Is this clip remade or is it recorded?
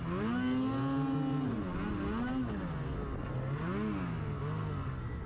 recorded